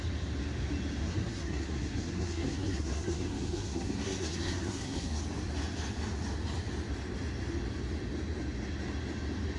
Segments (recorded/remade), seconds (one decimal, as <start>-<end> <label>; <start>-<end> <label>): 0.0-1.0 recorded; 1.0-5.2 remade; 5.2-9.6 recorded